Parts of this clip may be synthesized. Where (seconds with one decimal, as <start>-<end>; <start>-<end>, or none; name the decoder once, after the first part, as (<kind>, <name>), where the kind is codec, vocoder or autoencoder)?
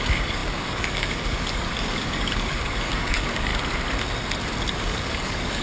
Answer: 0.0-3.5 (codec, DAC); 4.7-5.6